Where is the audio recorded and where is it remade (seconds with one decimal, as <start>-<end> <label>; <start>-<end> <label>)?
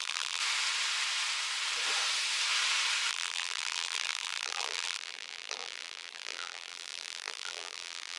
0.0-0.4 remade; 0.4-3.1 recorded; 3.1-8.2 remade